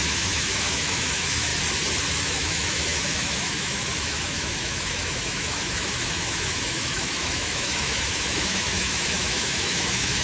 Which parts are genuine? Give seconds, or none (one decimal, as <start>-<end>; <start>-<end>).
1.5-2.1

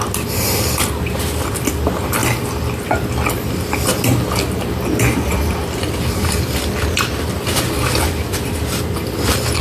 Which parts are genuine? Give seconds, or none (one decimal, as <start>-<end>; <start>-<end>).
0.0-9.6

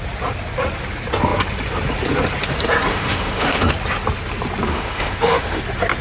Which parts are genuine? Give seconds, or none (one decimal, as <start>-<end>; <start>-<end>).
0.0-2.9; 3.7-4.7; 5.6-6.0

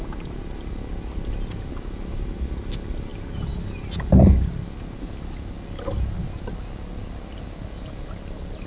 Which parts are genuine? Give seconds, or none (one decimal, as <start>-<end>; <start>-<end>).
0.0-8.7